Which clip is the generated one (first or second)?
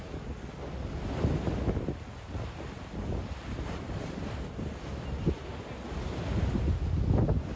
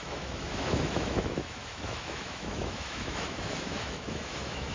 second